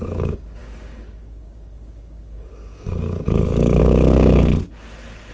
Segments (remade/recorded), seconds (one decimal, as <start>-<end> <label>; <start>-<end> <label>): 0.0-4.5 remade; 4.5-5.3 recorded